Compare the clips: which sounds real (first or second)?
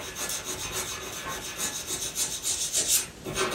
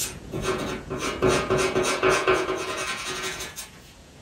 first